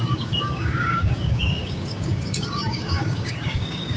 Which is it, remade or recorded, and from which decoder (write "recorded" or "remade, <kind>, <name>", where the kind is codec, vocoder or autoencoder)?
remade, codec, DAC